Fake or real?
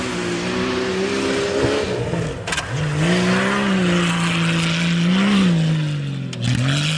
real